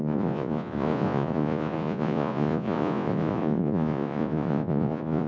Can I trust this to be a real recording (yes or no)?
no